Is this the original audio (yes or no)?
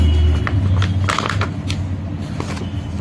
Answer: yes